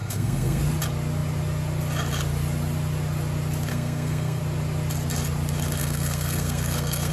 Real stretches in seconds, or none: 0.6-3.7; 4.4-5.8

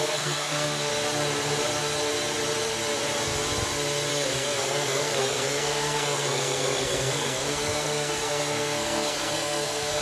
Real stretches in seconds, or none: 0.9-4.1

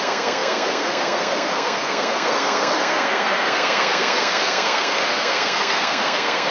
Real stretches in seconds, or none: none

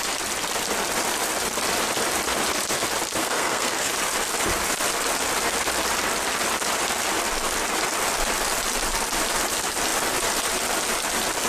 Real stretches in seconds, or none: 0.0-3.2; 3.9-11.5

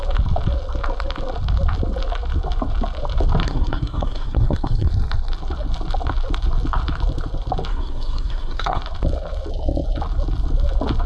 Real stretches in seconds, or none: 0.0-3.4; 4.9-7.7; 8.8-11.1

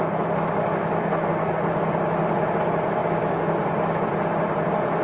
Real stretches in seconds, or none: 0.0-1.0; 1.6-5.0

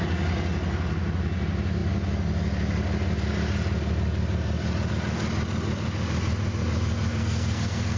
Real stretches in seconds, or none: 0.0-7.1

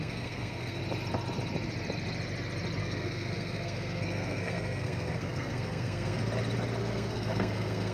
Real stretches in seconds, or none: 0.8-2.8; 6.2-6.8